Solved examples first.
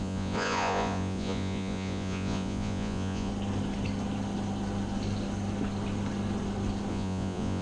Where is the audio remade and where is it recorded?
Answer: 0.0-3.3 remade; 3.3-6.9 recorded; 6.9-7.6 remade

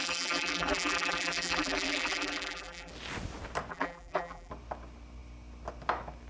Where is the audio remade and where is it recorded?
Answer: 0.0-2.9 remade; 2.9-3.7 recorded; 3.7-4.5 remade; 4.5-6.3 recorded

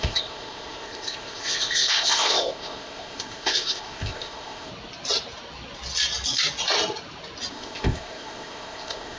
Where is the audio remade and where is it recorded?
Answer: 0.0-4.7 remade; 4.7-7.5 recorded; 7.5-9.2 remade

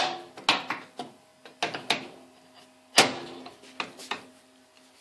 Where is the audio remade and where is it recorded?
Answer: 0.0-5.0 recorded

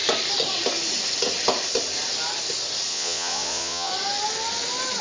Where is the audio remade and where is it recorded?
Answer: 0.0-2.9 recorded; 2.9-3.9 remade; 3.9-5.0 recorded